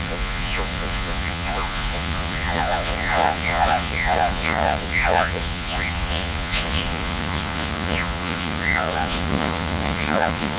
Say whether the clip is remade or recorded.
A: remade